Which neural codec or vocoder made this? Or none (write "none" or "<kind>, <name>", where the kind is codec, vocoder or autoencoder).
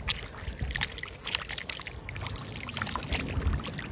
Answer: none